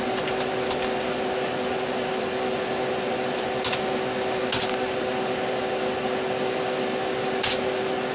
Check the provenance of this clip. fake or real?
real